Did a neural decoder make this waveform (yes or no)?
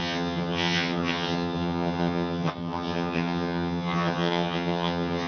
yes